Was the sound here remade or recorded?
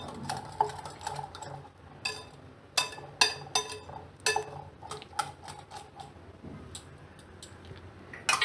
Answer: recorded